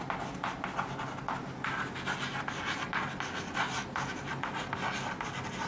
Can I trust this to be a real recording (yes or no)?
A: yes